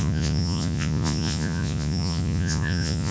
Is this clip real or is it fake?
fake